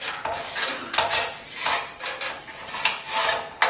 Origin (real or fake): real